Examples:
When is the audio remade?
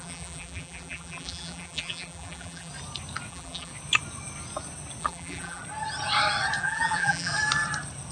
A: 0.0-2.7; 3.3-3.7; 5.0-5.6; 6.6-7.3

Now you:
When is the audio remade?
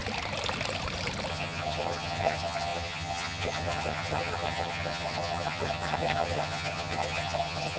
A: 1.3-7.8